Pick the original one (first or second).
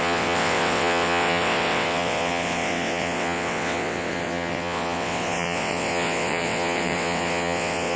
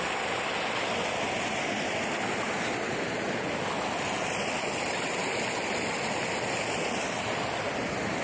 second